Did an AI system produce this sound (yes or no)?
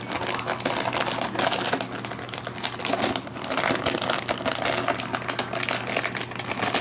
no